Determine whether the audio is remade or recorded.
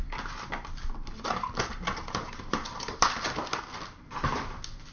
recorded